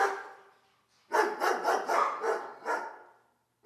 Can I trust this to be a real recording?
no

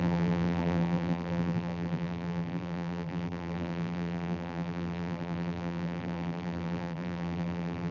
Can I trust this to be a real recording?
no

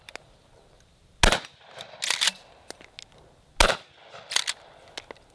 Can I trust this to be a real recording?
yes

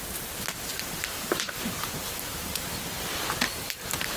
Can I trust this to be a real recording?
no